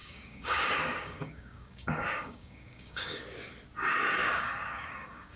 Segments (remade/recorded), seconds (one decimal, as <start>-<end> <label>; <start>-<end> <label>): 0.0-3.2 remade; 3.2-4.2 recorded; 4.2-5.4 remade